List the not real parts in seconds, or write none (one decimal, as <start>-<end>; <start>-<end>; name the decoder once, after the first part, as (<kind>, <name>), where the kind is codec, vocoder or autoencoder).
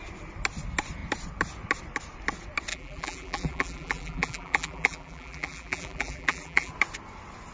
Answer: 2.7-6.7 (vocoder, BigVGAN v2)